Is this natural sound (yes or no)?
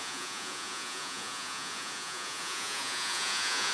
no